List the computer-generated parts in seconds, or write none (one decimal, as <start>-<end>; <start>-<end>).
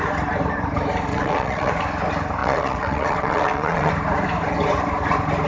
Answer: 1.1-1.7; 2.4-3.9